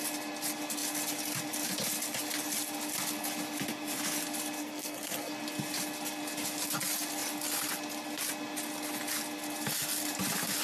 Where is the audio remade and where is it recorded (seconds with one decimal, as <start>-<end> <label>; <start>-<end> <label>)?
0.0-4.6 recorded; 4.6-5.3 remade; 5.3-10.6 recorded